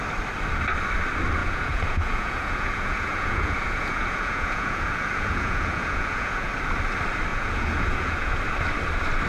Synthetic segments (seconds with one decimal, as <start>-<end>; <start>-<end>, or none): 1.4-6.5; 7.3-8.4